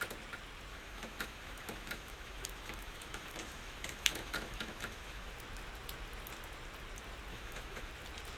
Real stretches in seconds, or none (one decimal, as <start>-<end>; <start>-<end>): 0.0-0.7; 5.3-7.3; 7.9-8.4